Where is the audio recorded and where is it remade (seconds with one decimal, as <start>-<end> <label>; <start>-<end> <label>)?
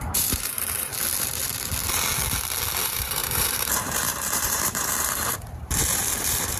0.0-0.9 remade; 0.9-2.8 recorded; 2.8-6.6 remade